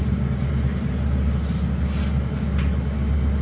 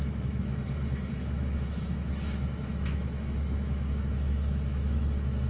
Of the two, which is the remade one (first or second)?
second